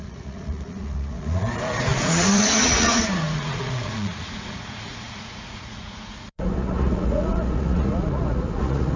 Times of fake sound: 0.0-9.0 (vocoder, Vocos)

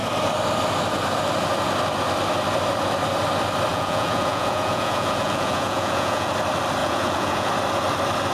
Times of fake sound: 3.7-6.3 (vocoder, Vocos); 6.8-7.5

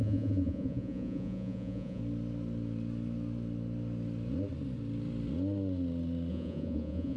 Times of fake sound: 0.0-2.0 (vocoder, Vocos); 6.3-7.2

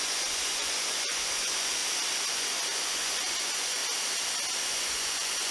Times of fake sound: 0.0-1.8 (vocoder, Vocos); 2.3-3.8; 4.6-5.5